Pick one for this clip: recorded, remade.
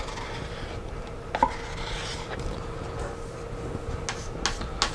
recorded